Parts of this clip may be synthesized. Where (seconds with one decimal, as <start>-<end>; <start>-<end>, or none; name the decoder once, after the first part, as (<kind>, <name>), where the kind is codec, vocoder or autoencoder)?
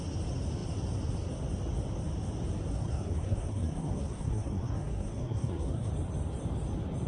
2.7-5.9 (codec, SNAC)